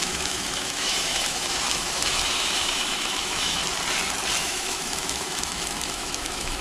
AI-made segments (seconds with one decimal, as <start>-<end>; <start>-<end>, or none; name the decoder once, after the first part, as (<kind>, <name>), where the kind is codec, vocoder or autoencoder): 0.0-3.6 (autoencoder, DAC-VAE); 4.4-6.6